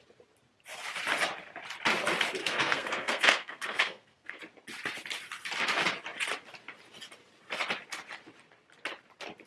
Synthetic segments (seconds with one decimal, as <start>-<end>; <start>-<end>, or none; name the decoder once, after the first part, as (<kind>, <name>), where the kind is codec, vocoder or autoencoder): 2.4-4.4 (codec, SNAC)